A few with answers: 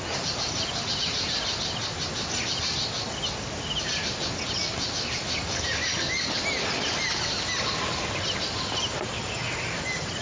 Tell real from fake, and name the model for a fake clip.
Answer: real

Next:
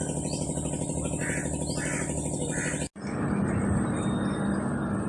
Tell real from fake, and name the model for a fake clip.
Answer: real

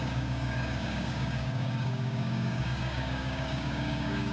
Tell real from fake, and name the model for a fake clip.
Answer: fake, codec, DAC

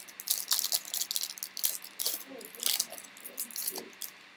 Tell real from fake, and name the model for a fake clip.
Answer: real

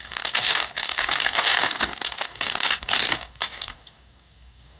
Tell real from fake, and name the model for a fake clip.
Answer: fake, codec, DAC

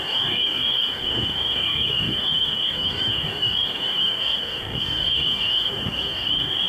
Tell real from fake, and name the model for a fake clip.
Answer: fake, codec, DAC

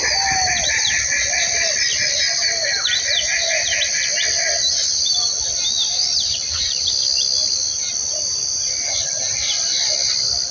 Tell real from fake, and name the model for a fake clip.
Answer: real